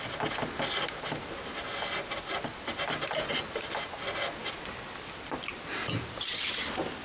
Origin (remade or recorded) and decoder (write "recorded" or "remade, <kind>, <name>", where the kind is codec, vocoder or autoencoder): recorded